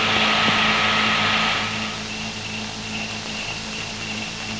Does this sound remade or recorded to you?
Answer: recorded